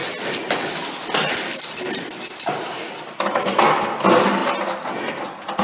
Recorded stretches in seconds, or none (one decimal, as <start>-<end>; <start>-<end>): 0.0-5.6